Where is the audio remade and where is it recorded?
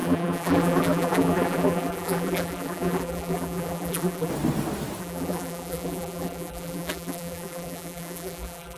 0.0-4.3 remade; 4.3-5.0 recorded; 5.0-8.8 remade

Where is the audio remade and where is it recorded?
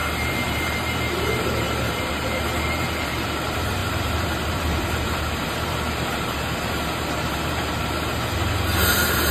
0.0-9.3 remade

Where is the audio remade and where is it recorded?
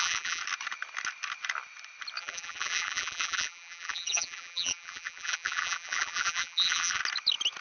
0.0-0.4 remade; 0.4-2.2 recorded; 2.2-7.0 remade; 7.0-7.6 recorded